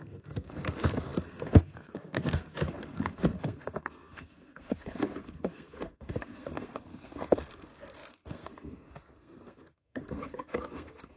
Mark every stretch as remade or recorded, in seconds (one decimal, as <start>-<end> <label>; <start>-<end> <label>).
0.0-11.2 remade

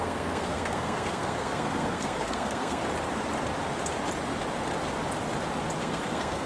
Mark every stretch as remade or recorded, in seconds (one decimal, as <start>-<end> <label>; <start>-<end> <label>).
0.0-2.8 remade; 2.8-5.8 recorded; 5.8-6.5 remade

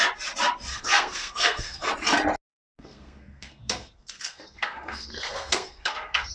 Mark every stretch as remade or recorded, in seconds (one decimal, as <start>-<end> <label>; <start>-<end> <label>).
0.0-0.7 recorded; 0.7-1.9 remade; 1.9-2.5 recorded; 2.5-6.3 remade